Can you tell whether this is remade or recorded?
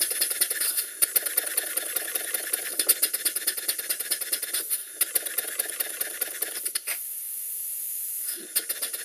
recorded